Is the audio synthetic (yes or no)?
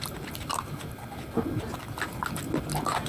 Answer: no